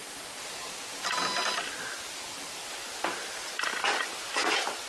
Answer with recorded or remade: recorded